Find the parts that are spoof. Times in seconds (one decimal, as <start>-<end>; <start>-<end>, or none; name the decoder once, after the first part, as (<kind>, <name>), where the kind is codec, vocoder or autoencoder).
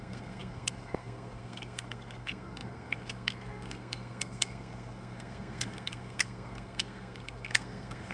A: 0.0-8.1 (codec, SNAC)